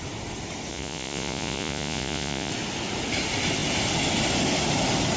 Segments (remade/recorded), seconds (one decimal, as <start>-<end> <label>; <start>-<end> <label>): 0.0-0.7 recorded; 0.7-2.5 remade; 2.5-5.2 recorded